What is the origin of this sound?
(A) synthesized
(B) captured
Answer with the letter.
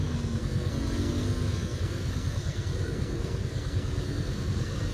A